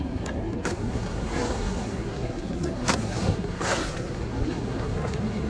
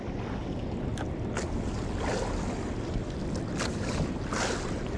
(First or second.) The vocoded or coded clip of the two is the first